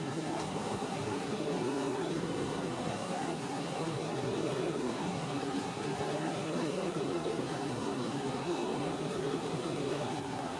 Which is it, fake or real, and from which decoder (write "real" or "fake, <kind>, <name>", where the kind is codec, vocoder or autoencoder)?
fake, codec, SNAC